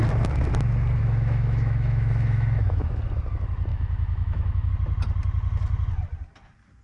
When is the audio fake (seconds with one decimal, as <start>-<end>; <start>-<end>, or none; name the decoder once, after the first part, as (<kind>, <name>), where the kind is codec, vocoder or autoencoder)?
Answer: 1.0-3.0 (autoencoder, DAC-VAE); 3.7-4.7